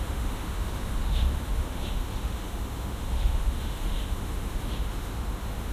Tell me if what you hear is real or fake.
fake